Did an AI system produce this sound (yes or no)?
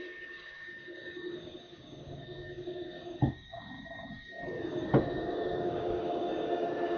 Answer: yes